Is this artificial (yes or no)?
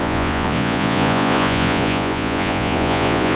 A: yes